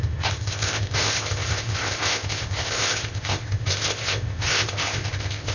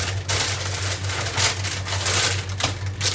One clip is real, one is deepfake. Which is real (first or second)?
second